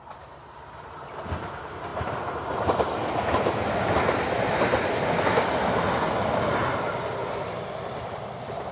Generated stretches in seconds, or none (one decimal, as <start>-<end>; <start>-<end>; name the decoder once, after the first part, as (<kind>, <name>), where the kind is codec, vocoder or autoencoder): 0.0-1.9 (vocoder, BigVGAN v2); 3.8-6.6; 7.3-8.7